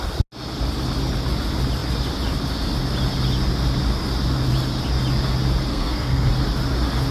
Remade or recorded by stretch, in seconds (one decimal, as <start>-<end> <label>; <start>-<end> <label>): 0.0-5.7 recorded; 5.7-6.3 remade; 6.3-7.1 recorded